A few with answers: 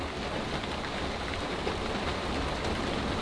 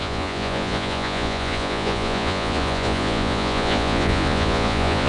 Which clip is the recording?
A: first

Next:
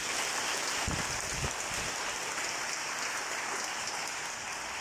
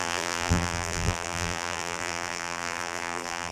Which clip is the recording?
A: first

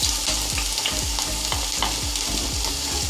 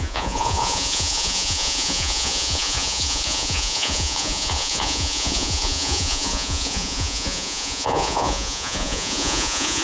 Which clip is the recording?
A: first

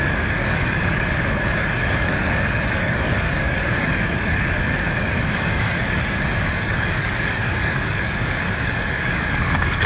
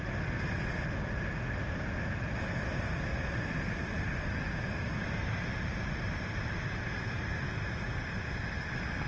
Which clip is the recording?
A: second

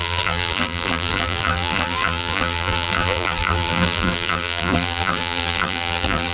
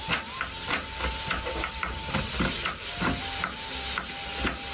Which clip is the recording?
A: second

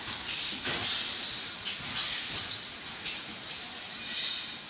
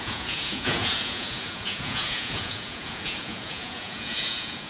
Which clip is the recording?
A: first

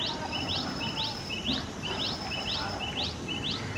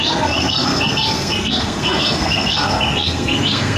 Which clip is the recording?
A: first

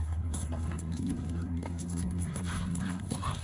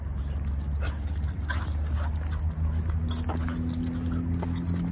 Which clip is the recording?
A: second